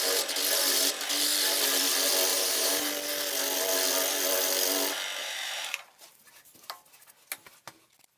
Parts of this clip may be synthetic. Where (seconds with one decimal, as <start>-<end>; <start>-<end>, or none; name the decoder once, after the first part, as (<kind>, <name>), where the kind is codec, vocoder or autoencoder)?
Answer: 2.3-2.9 (vocoder, BigVGAN v2); 5.2-6.2